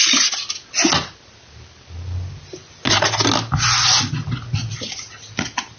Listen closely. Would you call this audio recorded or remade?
recorded